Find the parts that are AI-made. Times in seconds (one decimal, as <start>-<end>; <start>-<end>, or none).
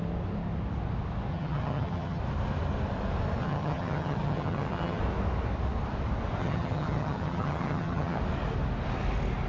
1.3-2.2; 3.4-5.0; 6.4-8.2